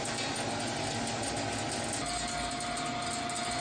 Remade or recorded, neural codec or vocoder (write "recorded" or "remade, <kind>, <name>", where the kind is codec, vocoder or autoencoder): recorded